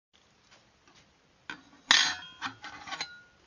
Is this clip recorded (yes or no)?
yes